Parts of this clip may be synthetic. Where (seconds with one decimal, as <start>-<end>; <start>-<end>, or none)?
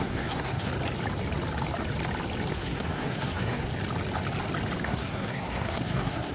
0.0-0.7; 2.5-3.7; 4.8-6.3